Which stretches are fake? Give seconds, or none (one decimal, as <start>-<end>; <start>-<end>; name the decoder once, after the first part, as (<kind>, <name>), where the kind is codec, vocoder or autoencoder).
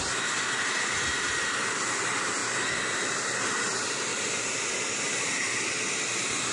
4.1-5.5 (vocoder, BigVGAN v2)